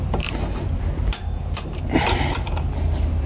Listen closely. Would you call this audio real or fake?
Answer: fake